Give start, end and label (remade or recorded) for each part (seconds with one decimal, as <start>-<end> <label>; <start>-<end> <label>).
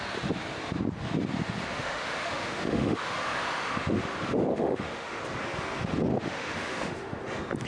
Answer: 0.0-1.7 recorded; 1.7-4.0 remade; 4.0-4.5 recorded; 4.5-5.2 remade; 5.2-6.1 recorded; 6.1-7.2 remade; 7.2-7.7 recorded